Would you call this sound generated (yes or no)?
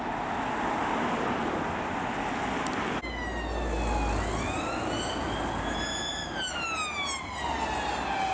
no